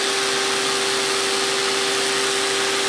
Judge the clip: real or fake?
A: real